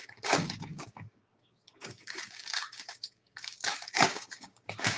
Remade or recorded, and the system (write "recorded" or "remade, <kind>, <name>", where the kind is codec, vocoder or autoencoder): remade, codec, DAC